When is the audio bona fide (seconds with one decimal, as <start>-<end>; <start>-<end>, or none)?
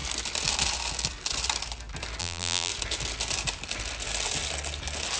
0.0-2.2; 2.7-5.2